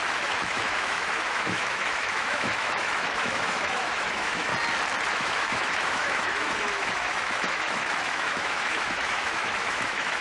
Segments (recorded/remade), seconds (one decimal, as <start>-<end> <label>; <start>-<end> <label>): 0.0-4.5 remade; 4.5-5.1 recorded; 5.1-10.2 remade